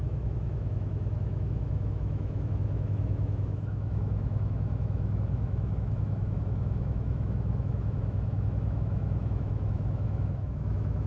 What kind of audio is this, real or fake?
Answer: fake